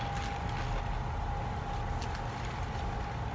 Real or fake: real